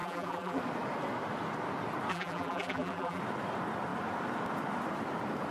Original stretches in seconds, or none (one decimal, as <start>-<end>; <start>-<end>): 0.6-2.1; 3.2-5.5